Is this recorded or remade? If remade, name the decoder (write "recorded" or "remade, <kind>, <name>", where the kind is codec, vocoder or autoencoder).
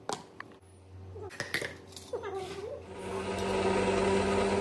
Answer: recorded